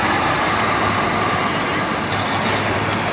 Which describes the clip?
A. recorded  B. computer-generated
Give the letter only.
A